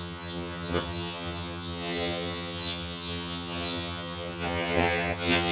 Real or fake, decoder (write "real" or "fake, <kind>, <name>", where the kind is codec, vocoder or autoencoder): fake, vocoder, HiFi-GAN